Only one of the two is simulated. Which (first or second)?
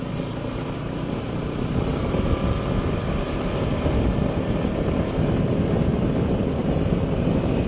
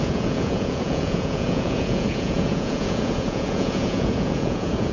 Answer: second